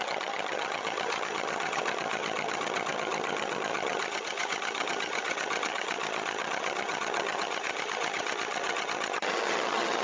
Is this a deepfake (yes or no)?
yes